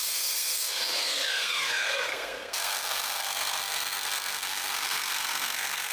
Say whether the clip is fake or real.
fake